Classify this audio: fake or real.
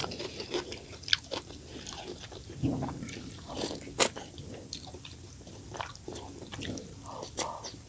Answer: fake